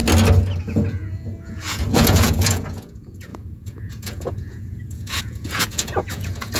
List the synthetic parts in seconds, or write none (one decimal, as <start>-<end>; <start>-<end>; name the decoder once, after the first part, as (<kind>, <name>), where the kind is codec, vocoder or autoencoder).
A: 0.6-6.6 (vocoder, Vocos)